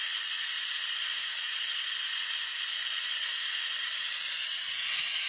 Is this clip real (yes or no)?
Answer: yes